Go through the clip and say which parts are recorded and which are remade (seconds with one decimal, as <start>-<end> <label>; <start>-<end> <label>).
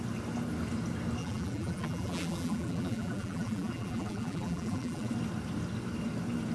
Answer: 0.0-1.2 recorded; 1.2-5.1 remade; 5.1-6.5 recorded